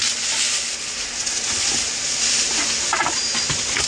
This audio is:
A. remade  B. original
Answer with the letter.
B